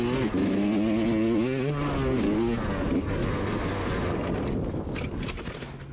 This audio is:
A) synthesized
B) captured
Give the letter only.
B